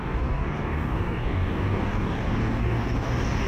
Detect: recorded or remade remade